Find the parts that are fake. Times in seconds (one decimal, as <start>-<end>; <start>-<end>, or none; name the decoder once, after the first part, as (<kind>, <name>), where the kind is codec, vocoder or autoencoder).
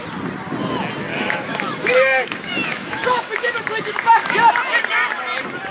1.1-4.5 (autoencoder, DAC-VAE)